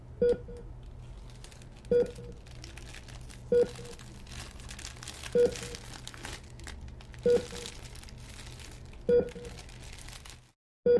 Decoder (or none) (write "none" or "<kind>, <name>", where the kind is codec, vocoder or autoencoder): none